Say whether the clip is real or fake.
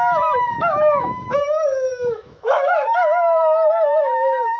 fake